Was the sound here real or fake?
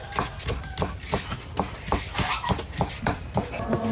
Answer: real